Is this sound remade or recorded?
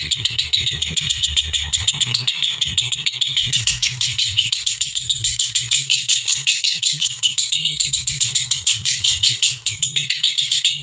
remade